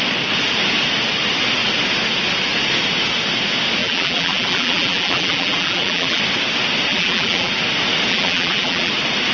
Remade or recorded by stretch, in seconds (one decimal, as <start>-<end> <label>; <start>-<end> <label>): 0.0-3.8 recorded; 3.8-6.2 remade; 6.2-6.9 recorded; 6.9-7.5 remade; 7.5-8.1 recorded; 8.1-8.9 remade; 8.9-9.3 recorded